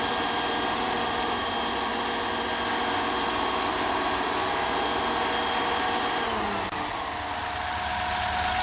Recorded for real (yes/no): yes